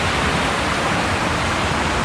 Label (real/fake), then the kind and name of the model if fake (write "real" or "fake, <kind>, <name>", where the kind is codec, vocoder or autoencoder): fake, vocoder, BigVGAN v2